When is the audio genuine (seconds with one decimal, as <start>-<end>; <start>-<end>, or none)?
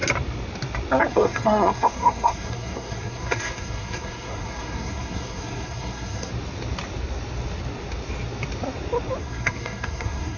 0.0-1.1; 6.3-9.2